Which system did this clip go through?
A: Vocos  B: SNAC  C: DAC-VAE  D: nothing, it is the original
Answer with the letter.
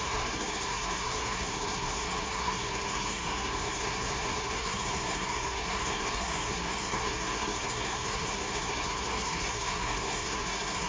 B